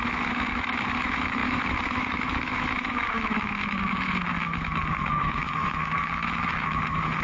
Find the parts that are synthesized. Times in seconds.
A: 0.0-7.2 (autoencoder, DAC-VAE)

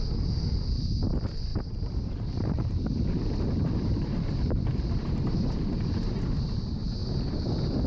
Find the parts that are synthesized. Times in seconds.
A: 1.5-6.2 (vocoder, BigVGAN v2)